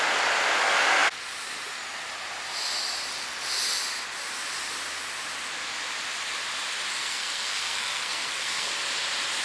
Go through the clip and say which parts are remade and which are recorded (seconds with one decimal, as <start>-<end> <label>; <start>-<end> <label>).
0.0-6.9 recorded; 6.9-8.7 remade; 8.7-9.4 recorded